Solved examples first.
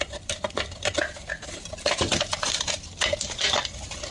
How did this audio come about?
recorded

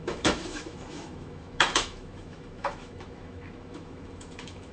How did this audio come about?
remade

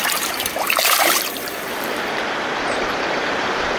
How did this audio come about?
remade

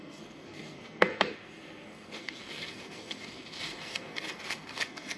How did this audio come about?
remade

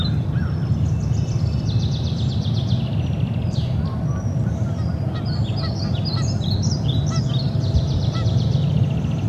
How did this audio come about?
remade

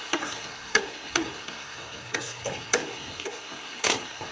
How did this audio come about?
remade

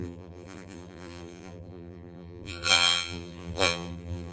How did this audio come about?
remade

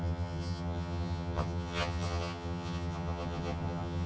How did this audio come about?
remade